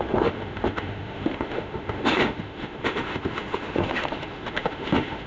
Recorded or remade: remade